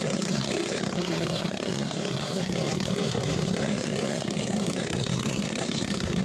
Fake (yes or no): yes